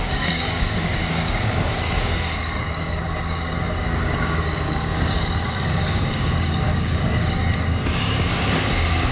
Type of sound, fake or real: fake